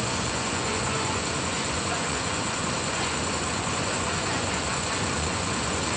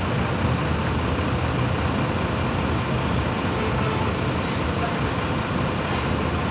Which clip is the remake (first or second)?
first